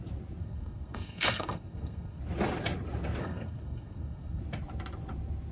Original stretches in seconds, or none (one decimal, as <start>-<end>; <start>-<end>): 0.0-0.4; 2.2-3.2; 4.4-5.5